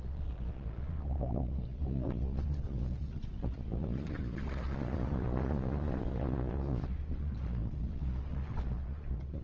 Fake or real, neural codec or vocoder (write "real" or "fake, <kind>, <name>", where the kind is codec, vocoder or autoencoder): fake, vocoder, Vocos